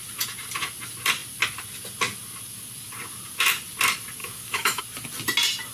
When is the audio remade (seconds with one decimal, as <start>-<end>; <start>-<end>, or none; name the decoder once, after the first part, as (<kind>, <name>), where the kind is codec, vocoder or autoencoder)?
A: 4.2-4.8 (autoencoder, DAC-VAE)